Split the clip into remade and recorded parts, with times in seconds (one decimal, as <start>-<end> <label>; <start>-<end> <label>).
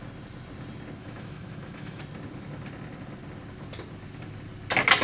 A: 0.0-1.0 recorded; 1.0-2.0 remade; 2.0-5.0 recorded